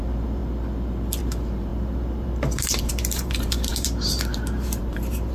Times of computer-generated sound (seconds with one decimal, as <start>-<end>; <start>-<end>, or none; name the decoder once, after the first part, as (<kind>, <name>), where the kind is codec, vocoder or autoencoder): 0.0-0.4 (vocoder, BigVGAN v2); 1.2-5.3